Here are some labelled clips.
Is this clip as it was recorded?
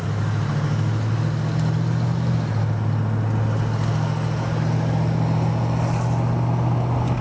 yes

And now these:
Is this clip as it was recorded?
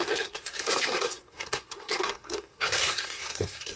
no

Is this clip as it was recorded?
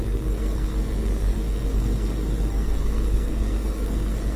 no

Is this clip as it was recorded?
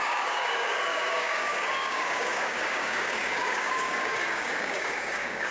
no